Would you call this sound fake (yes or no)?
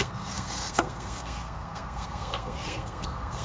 yes